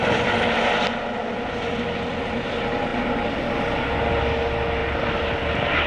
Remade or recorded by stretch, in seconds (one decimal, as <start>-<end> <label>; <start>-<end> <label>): 0.0-1.2 recorded; 1.2-2.1 remade; 2.1-5.9 recorded